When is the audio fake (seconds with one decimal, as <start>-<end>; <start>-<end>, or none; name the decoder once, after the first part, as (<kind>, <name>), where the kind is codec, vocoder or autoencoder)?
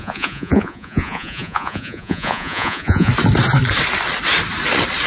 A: 0.0-3.1 (vocoder, Vocos)